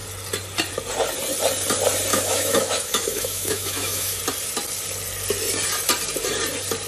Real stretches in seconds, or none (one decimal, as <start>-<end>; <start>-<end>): 0.0-2.1; 4.2-6.9